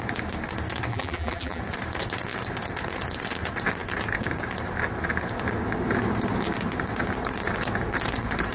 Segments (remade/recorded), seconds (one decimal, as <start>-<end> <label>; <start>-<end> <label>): 0.0-0.9 recorded; 0.9-1.6 remade; 1.6-8.5 recorded